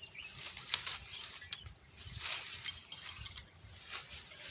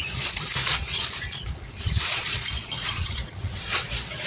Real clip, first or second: first